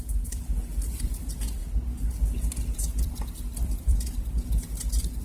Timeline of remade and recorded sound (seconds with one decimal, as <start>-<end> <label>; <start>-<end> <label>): 0.0-1.6 remade; 1.6-2.3 recorded; 2.3-5.2 remade

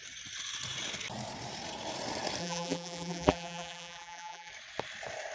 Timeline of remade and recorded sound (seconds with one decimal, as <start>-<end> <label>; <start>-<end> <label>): 0.0-2.4 recorded; 2.4-4.5 remade; 4.5-5.3 recorded

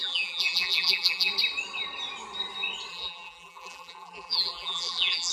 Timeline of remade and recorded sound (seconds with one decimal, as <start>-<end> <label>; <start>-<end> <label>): 0.0-1.3 remade; 1.3-2.9 recorded; 2.9-5.3 remade

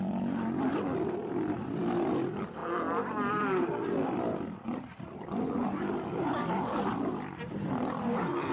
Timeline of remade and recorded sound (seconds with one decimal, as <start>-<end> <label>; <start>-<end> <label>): 0.0-2.6 remade; 2.6-3.3 recorded; 3.3-8.5 remade